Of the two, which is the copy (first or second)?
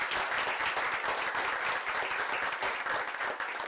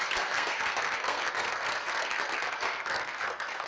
second